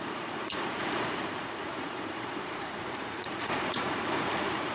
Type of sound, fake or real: fake